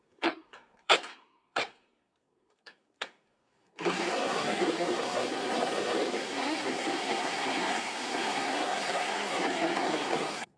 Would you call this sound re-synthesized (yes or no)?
yes